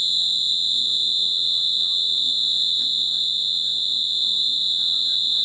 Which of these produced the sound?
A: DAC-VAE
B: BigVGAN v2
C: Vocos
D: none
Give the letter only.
C